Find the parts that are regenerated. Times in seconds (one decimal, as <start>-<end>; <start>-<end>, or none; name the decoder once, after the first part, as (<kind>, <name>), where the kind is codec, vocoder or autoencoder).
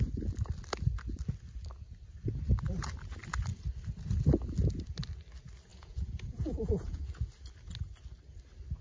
5.7-7.0 (vocoder, Vocos)